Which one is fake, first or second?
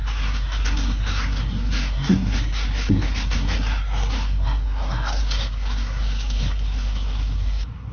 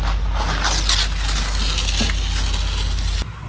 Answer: first